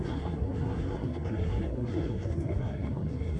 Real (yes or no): no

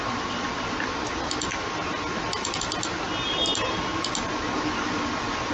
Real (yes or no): yes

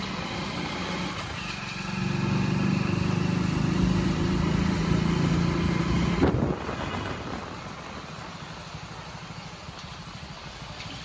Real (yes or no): yes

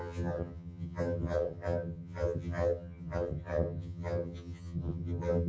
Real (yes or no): no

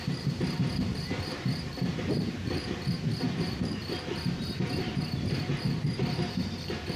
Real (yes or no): no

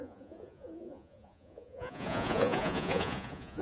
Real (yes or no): no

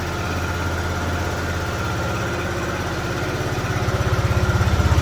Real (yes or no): yes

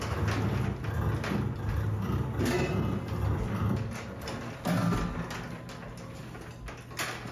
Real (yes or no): yes